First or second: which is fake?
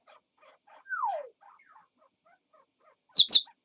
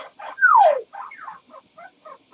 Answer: second